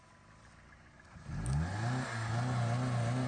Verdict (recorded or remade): recorded